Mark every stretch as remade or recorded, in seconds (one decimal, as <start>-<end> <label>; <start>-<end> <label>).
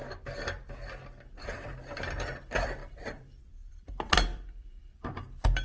0.0-1.4 recorded; 1.4-5.6 remade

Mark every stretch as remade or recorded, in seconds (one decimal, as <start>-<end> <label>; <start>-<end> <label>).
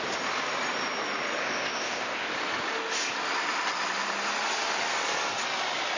0.0-1.4 recorded; 1.4-2.3 remade; 2.3-6.0 recorded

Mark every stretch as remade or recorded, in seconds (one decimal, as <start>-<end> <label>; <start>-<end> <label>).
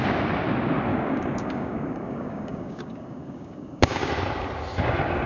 0.0-0.9 recorded; 0.9-4.1 remade; 4.1-5.3 recorded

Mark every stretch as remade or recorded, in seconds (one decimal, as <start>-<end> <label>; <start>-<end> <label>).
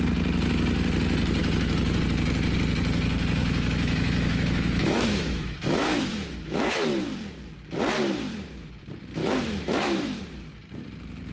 0.0-1.4 recorded; 1.4-2.0 remade; 2.0-3.4 recorded; 3.4-6.8 remade; 6.8-9.2 recorded; 9.2-10.2 remade; 10.2-11.3 recorded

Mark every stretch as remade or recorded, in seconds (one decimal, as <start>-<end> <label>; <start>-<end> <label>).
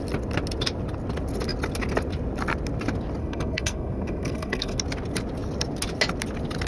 0.0-3.2 recorded; 3.2-4.8 remade; 4.8-6.7 recorded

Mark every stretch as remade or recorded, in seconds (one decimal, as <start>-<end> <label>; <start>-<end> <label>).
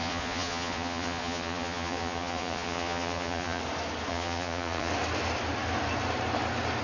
0.0-3.6 remade; 3.6-4.1 recorded; 4.1-4.9 remade; 4.9-6.8 recorded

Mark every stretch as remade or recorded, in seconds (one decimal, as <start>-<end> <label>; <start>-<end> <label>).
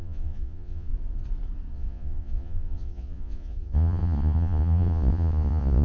0.0-0.9 remade; 0.9-1.7 recorded; 1.7-5.8 remade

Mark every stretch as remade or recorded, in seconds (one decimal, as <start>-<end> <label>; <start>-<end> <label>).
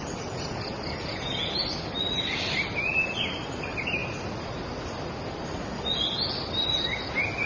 0.0-7.5 recorded